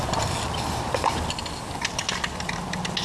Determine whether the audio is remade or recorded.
recorded